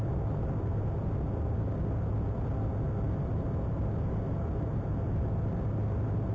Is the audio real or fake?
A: real